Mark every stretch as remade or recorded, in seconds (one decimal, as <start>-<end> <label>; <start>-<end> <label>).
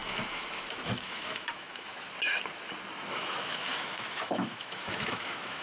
0.0-1.9 remade; 1.9-3.2 recorded; 3.2-5.6 remade